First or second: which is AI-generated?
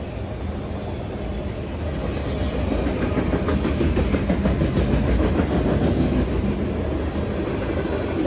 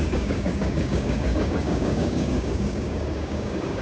second